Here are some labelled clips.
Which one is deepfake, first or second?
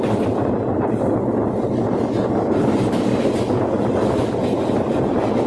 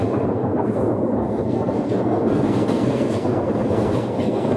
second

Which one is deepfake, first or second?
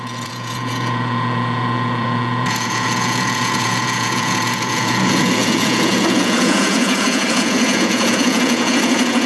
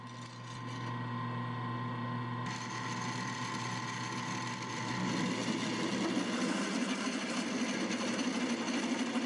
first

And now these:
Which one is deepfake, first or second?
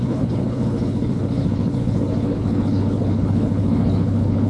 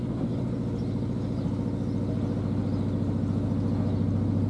first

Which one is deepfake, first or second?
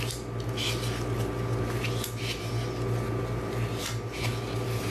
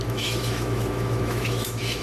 second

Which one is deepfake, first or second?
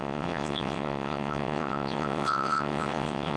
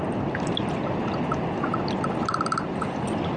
first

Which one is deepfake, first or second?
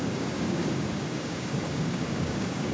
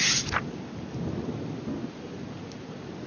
first